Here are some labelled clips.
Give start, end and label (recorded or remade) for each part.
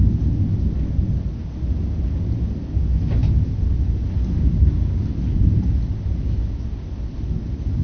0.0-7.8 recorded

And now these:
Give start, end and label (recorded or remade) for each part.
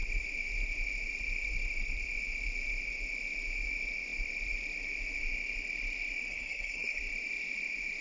0.0-6.3 recorded; 6.3-7.0 remade; 7.0-8.0 recorded